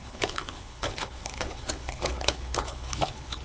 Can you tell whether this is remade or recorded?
remade